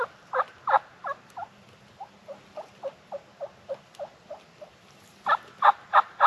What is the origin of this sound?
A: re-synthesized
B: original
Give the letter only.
B